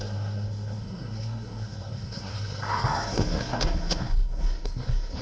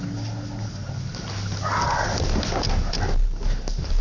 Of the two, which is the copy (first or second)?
first